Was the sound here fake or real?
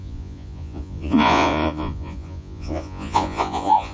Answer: fake